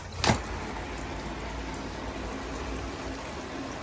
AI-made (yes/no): no